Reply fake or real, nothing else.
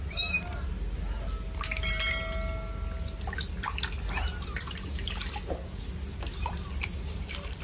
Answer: real